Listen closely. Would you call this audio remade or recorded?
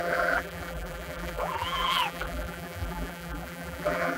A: remade